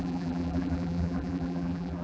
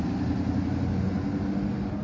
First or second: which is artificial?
first